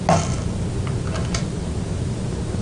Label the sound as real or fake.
real